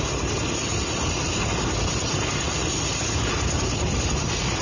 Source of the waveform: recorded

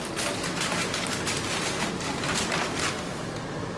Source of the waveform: recorded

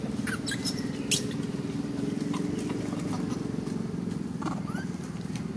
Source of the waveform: recorded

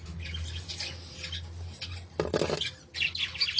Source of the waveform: recorded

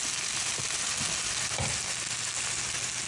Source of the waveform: recorded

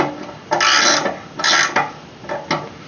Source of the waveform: recorded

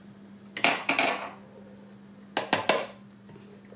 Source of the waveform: recorded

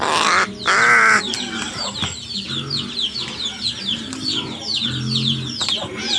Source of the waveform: recorded